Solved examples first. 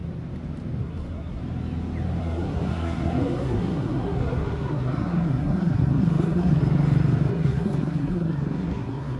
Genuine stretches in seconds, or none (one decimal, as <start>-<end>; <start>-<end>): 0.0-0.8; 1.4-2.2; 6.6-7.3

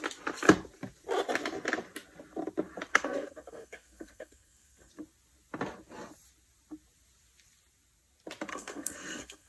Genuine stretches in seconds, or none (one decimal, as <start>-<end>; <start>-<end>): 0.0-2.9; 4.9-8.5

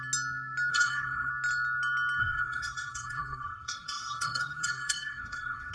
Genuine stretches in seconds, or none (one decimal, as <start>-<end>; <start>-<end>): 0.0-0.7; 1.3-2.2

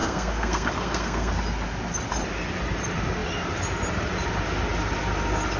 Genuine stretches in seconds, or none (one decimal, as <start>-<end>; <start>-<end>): 1.3-5.6